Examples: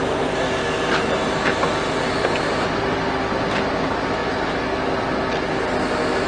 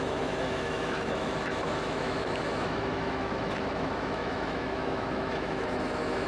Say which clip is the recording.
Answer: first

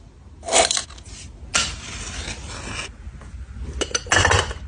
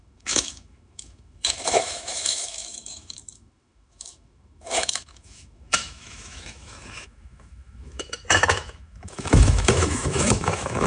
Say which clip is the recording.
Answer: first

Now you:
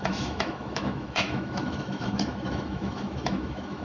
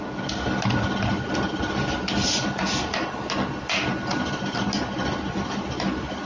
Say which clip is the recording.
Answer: second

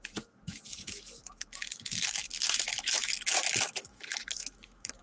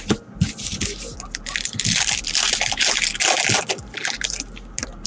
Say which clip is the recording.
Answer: second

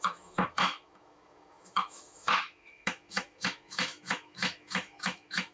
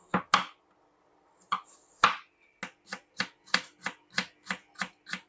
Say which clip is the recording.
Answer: second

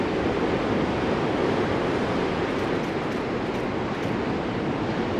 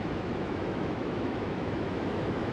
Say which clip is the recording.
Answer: first